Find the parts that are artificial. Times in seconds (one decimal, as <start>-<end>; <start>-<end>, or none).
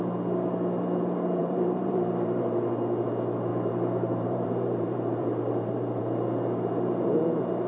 1.4-2.7; 3.5-6.0